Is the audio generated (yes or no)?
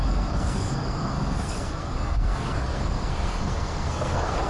yes